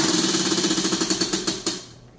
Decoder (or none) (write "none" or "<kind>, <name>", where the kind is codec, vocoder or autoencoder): vocoder, BigVGAN v2